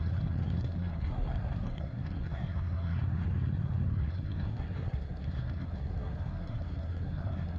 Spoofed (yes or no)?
yes